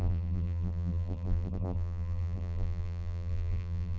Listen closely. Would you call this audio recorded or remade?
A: remade